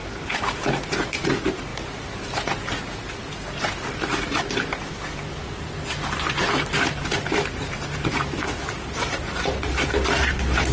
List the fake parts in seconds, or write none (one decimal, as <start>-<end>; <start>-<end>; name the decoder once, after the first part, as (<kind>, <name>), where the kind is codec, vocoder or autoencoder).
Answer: 1.2-1.7 (vocoder, BigVGAN v2); 4.9-10.7